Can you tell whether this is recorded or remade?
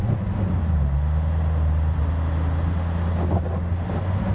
recorded